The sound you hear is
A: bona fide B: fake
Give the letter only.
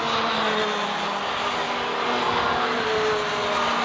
A